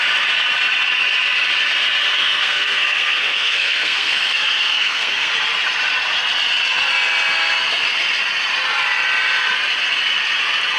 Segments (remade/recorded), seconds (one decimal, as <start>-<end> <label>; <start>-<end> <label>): 0.0-2.2 recorded; 2.2-5.3 remade; 5.3-10.8 recorded